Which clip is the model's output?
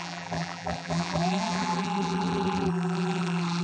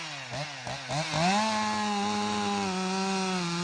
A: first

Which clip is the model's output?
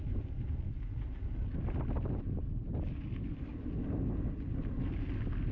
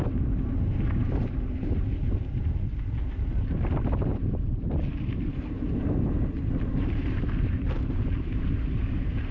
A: second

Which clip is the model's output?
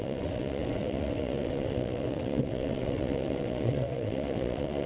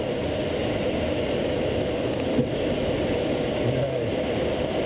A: first